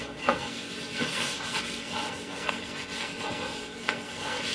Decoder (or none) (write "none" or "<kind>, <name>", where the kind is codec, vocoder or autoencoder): codec, SNAC